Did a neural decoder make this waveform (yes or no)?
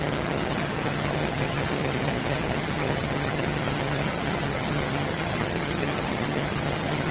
yes